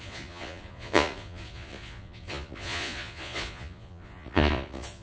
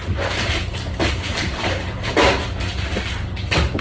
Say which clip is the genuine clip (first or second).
second